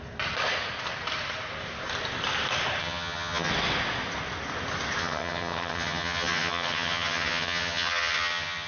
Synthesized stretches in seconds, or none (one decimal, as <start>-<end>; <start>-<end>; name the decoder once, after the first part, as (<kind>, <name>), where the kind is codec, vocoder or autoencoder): 2.8-3.5 (vocoder, HiFi-GAN); 5.0-8.7